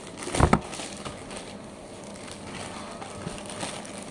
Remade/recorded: recorded